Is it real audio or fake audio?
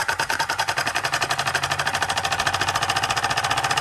real